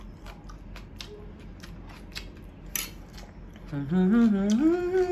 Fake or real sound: real